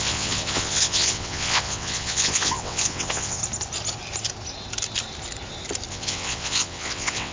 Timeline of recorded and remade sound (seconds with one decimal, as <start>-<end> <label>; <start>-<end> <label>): 0.0-3.4 remade; 3.4-5.9 recorded; 5.9-7.3 remade